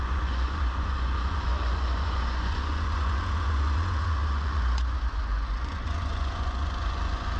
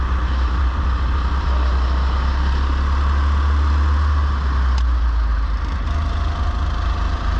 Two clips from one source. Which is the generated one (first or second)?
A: first